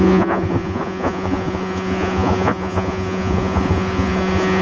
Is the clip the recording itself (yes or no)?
no